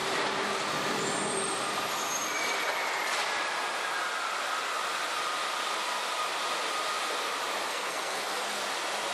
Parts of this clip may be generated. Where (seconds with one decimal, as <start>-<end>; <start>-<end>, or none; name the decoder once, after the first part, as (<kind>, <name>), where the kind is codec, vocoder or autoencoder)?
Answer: 7.7-8.6 (codec, SNAC)